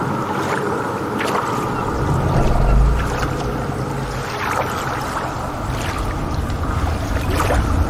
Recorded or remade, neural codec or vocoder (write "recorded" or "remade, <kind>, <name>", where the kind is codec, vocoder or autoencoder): recorded